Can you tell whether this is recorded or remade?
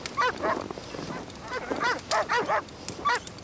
recorded